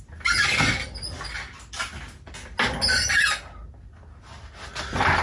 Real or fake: real